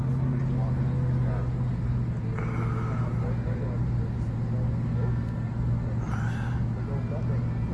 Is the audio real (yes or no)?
yes